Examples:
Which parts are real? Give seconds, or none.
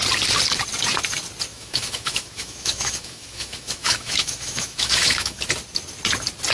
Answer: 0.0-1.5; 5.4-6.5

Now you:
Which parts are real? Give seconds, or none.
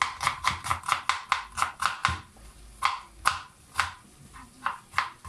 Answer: 0.0-5.3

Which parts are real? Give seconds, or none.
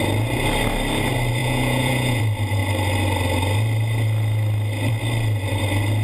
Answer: 0.0-1.4; 2.2-6.0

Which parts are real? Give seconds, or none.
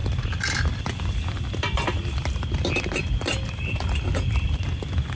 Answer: 0.0-5.2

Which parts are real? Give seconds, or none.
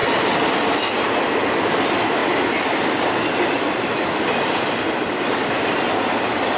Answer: 0.0-2.2; 5.9-6.6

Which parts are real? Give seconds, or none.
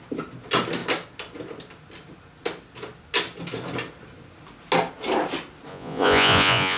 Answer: 0.0-5.7